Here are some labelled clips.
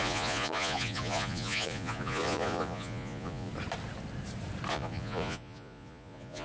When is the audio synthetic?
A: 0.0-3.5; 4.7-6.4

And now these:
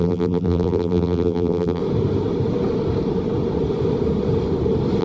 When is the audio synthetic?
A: 0.0-1.8

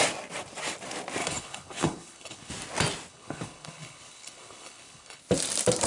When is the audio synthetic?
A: 1.2-2.5; 3.1-5.2

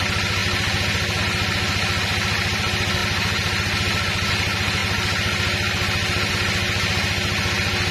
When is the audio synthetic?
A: none

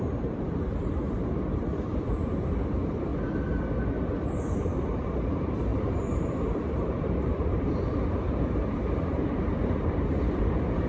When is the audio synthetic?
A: 0.0-3.1; 4.2-10.9